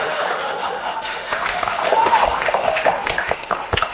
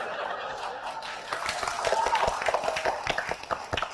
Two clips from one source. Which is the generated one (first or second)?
first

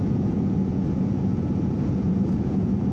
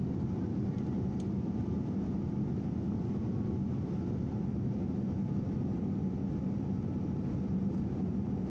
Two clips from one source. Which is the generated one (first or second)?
first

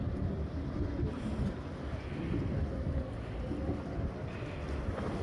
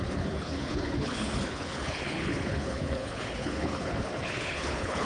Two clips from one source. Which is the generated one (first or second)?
second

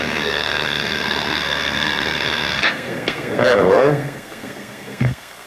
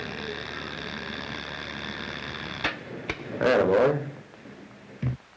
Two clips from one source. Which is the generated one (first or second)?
first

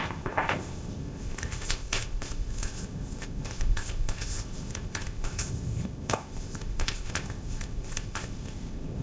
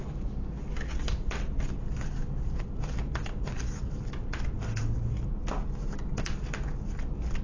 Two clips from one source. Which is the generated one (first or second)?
first